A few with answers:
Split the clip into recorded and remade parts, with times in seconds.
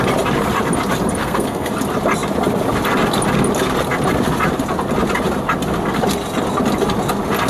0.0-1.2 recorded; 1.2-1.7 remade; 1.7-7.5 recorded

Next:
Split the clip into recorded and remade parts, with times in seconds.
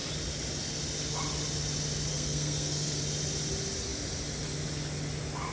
0.0-2.1 recorded; 2.1-3.0 remade; 3.0-5.5 recorded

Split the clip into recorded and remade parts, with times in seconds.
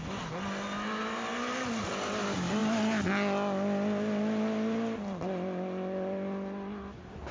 0.0-7.3 recorded